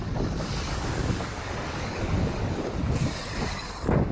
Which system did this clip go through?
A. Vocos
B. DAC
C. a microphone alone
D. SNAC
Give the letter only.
B